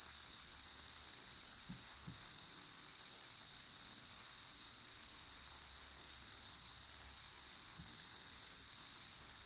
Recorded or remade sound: remade